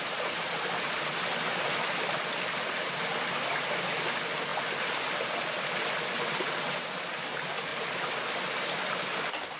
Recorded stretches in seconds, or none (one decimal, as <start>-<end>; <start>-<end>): 0.0-9.6